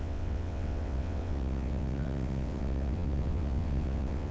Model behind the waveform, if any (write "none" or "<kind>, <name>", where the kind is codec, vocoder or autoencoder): vocoder, WaveNeXt